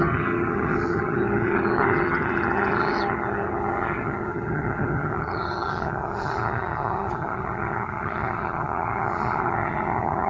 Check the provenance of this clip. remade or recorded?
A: remade